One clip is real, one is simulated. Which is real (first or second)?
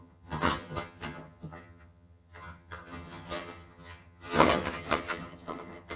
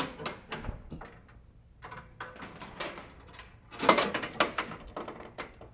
second